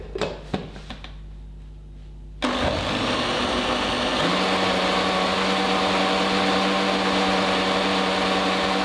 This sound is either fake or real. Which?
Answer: real